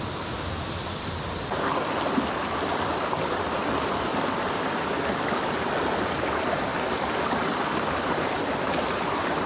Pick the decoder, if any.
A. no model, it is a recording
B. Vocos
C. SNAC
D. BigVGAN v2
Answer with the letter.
A